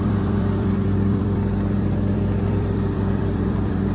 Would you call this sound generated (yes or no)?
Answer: yes